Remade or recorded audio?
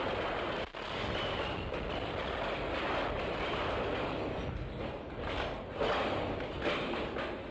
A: recorded